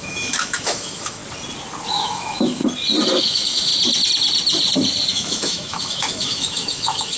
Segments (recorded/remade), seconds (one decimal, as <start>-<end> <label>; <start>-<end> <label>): 0.0-1.2 remade; 1.2-1.9 recorded; 1.9-2.6 remade; 2.6-3.2 recorded; 3.2-3.7 remade; 3.7-5.1 recorded; 5.1-7.2 remade